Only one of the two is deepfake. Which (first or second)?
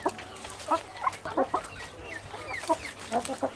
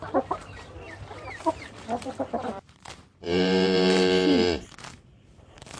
second